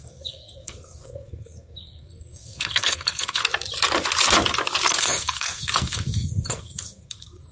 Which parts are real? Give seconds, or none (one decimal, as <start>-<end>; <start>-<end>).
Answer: 3.4-5.0